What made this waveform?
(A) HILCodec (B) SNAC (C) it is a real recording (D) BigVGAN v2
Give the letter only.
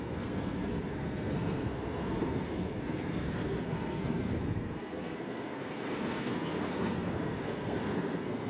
B